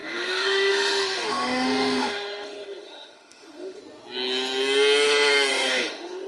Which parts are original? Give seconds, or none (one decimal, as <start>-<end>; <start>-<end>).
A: 3.8-5.5